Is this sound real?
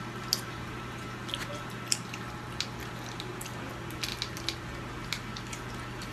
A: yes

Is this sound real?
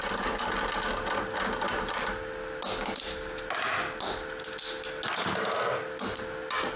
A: yes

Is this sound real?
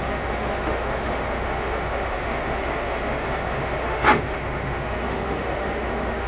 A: no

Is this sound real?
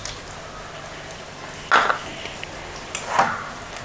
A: yes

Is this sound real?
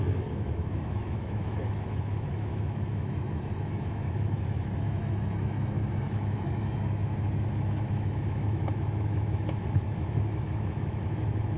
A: no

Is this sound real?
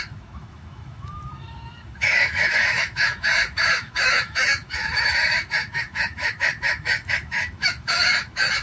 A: no